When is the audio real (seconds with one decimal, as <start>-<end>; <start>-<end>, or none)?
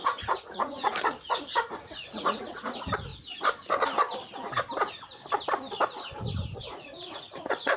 3.1-6.6